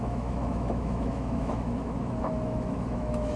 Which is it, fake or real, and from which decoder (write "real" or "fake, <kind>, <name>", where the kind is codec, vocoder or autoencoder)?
fake, autoencoder, DAC-VAE